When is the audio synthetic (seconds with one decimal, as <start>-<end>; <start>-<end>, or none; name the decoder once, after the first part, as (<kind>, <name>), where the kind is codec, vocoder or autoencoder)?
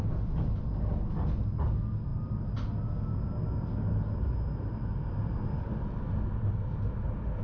none